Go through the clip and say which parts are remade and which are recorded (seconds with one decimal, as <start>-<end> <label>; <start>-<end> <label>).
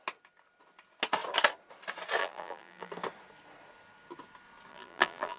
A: 0.0-2.2 recorded; 2.2-2.9 remade; 2.9-4.7 recorded; 4.7-5.4 remade